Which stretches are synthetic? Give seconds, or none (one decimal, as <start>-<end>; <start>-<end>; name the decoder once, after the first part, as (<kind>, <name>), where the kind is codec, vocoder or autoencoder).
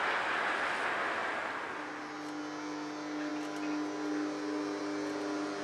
none